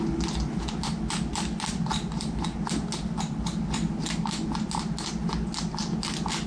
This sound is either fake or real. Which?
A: real